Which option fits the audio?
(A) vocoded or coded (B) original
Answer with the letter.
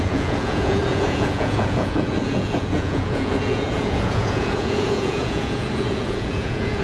A